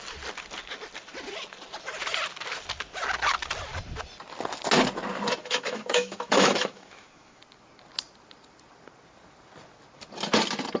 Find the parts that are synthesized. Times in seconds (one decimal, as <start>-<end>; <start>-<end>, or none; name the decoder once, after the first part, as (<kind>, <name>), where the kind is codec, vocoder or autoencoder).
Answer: 5.4-7.4 (autoencoder, DAC-VAE)